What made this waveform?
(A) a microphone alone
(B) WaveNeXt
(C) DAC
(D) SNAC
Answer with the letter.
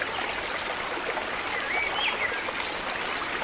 A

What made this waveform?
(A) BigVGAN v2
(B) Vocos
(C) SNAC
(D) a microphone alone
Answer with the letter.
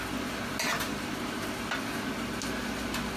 D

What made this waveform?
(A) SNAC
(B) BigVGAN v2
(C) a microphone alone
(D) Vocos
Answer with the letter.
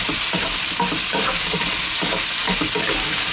C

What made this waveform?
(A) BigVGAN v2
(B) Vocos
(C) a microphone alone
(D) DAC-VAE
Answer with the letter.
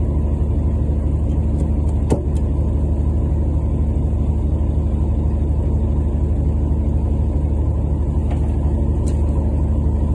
C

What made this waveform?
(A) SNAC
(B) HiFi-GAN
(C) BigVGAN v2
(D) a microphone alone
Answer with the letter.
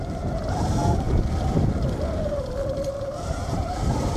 D